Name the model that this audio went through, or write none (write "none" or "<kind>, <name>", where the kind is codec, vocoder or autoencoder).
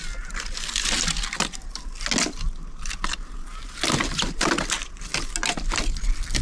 none